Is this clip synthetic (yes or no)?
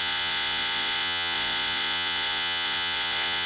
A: yes